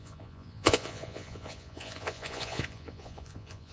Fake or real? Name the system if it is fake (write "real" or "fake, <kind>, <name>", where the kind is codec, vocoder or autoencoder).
fake, vocoder, Vocos